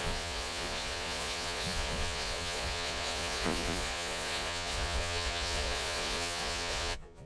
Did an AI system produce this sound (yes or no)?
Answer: yes